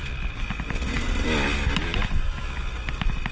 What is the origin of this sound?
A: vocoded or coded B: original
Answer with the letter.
B